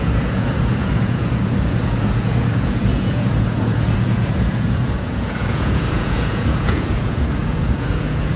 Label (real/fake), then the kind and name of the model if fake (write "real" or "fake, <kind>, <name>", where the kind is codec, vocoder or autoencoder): fake, vocoder, Vocos